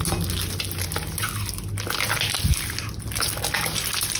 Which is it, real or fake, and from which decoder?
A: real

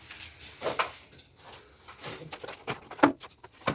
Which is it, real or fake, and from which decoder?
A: real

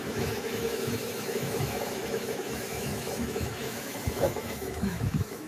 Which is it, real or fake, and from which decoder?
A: fake, autoencoder, DAC-VAE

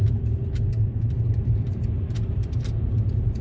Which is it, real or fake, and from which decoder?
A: fake, vocoder, BigVGAN v2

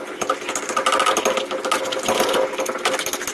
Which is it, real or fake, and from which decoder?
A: real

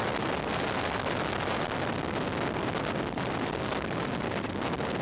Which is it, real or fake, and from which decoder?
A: real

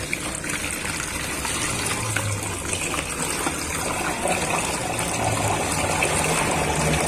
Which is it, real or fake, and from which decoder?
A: real